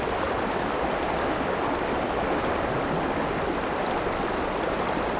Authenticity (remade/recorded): recorded